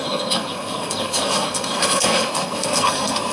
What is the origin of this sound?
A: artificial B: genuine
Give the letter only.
A